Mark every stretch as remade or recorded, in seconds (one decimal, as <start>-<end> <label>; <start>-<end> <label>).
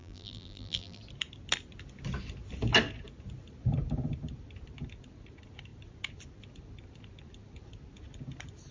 0.0-1.0 remade; 1.0-8.7 recorded